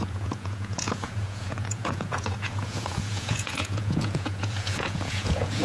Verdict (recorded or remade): remade